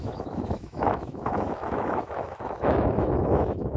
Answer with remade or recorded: remade